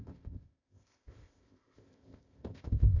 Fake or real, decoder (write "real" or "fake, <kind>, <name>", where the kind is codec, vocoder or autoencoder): fake, codec, ZipCodec